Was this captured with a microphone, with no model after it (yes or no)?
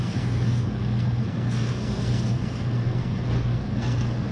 no